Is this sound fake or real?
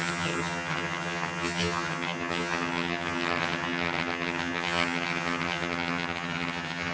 fake